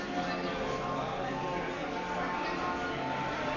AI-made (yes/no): no